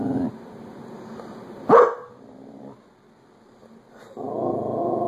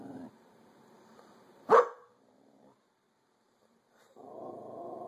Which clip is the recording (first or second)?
first